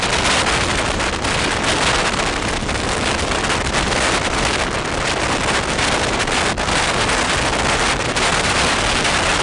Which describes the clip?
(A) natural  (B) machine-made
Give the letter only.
A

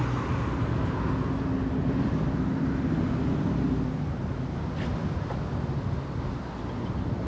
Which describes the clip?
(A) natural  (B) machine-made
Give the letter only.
A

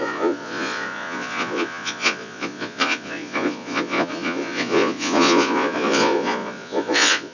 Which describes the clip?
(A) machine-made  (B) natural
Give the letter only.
A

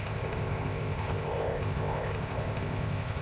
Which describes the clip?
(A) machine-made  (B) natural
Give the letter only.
A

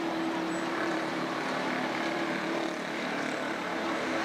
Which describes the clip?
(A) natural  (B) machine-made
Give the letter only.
B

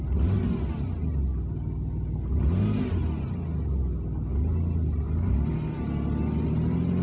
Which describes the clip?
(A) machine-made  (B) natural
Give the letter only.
B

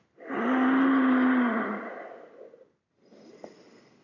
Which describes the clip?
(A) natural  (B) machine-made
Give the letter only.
A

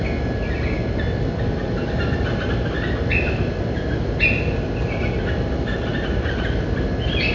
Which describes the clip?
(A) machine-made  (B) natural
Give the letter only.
B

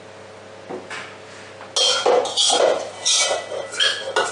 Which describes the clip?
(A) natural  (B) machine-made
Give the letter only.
A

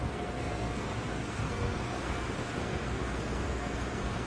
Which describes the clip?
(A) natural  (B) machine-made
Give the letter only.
B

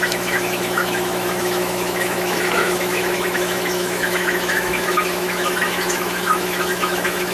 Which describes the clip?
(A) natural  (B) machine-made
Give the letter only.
B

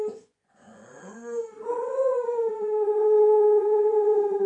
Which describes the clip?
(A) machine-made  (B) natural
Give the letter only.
A